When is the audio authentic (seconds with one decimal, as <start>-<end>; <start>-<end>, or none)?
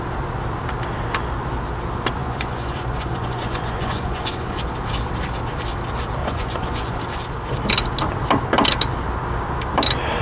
0.0-2.2; 4.7-6.2; 7.0-10.2